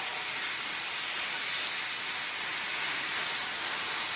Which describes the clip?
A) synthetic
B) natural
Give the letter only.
B